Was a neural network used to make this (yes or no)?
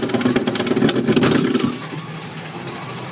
no